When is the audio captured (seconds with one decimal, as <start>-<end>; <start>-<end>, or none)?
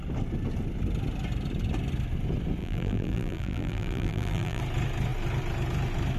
0.0-2.6; 4.6-6.2